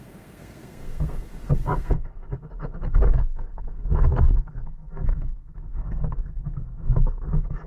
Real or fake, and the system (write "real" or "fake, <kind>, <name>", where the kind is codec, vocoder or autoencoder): fake, codec, SNAC